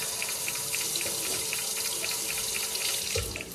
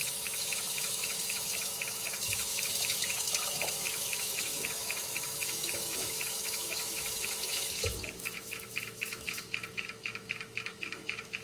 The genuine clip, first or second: first